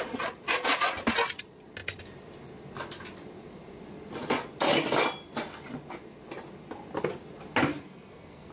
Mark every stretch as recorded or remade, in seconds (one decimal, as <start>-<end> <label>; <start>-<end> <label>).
0.0-7.7 recorded; 7.7-8.5 remade